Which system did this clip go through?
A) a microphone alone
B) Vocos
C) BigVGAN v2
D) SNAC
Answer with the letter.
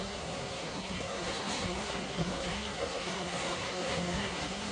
D